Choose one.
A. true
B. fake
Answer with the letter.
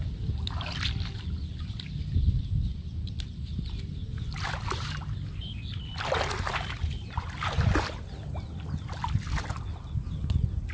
A